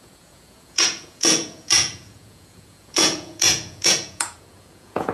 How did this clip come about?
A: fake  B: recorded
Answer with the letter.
A